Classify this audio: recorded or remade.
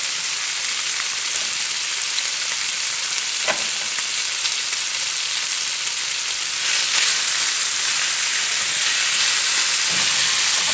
recorded